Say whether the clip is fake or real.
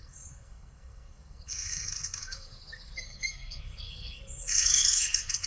fake